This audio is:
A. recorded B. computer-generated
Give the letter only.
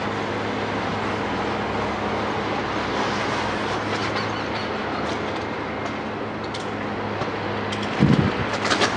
A